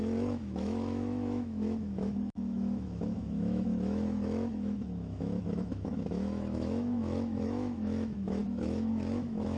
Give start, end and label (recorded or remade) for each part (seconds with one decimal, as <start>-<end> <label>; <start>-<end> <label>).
0.0-9.6 remade